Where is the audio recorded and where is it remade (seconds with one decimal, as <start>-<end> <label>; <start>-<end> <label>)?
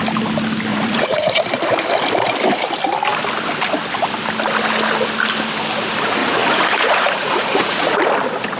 0.0-0.7 recorded; 0.7-1.4 remade; 1.4-6.2 recorded; 6.2-8.0 remade; 8.0-8.6 recorded